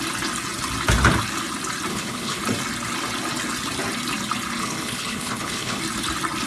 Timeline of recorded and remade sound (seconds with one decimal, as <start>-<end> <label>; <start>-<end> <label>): 0.0-1.9 recorded; 1.9-2.4 remade; 2.4-4.6 recorded; 4.6-5.8 remade; 5.8-6.5 recorded